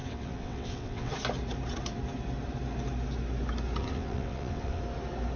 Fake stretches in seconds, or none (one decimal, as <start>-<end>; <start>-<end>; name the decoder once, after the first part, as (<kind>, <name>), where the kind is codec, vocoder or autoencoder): 0.0-1.1 (vocoder, WaveNeXt); 3.8-4.8